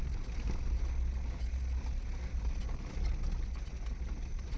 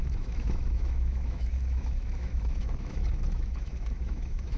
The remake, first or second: second